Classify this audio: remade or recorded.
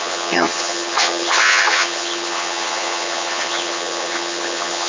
remade